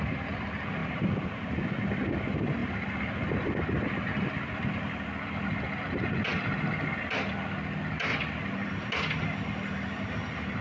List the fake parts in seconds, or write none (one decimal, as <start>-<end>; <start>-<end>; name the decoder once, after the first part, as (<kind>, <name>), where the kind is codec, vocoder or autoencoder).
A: 0.8-1.7 (vocoder, BigVGAN v2); 2.6-5.4; 8.1-8.9